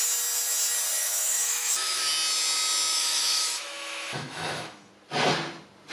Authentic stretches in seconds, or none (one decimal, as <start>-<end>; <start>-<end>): 0.0-1.0; 2.0-2.9; 4.9-5.9